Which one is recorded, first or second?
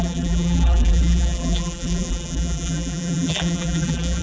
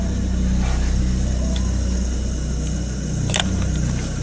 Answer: second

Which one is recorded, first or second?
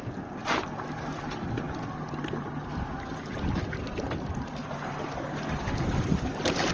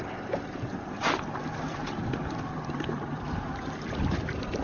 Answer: first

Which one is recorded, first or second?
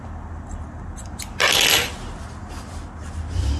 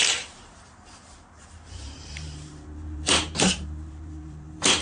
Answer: first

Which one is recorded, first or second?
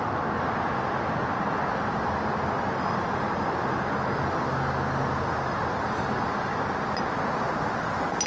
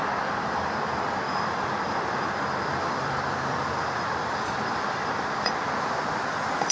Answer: first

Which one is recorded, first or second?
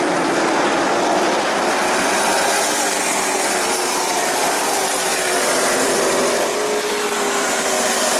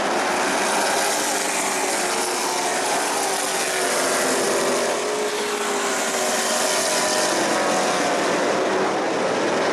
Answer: second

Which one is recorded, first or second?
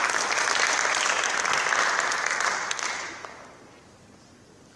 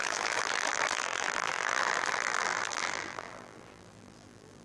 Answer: first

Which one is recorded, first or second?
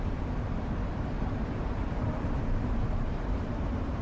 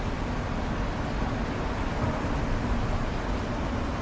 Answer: second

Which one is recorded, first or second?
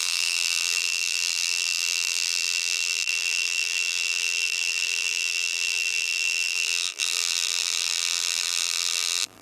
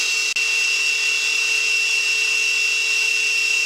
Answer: second